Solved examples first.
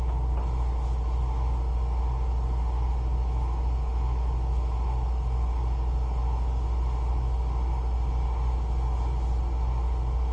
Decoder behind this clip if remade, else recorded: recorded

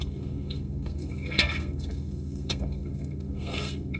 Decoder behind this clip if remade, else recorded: remade, codec, SNAC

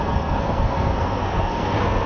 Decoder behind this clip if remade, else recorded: remade, codec, SNAC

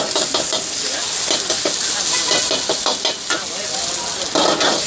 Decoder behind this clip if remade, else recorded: recorded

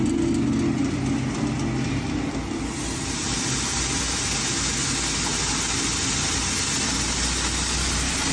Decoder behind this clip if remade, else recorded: recorded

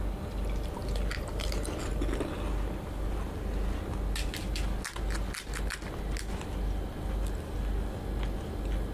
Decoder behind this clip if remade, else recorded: recorded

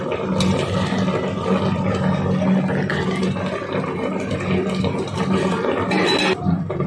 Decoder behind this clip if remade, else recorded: recorded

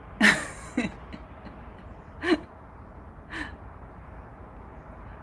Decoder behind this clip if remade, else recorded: recorded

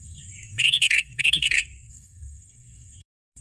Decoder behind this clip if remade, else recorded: remade, codec, SNAC